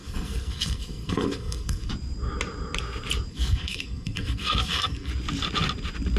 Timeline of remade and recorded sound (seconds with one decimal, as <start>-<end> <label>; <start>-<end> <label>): 0.0-1.9 remade; 1.9-3.3 recorded; 3.3-5.1 remade; 5.1-6.2 recorded